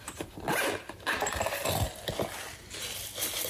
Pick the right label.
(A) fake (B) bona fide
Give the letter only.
B